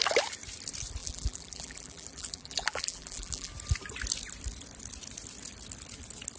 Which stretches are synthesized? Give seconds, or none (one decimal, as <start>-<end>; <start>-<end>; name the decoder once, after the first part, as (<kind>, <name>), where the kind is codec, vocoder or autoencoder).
1.0-3.5 (vocoder, BigVGAN v2)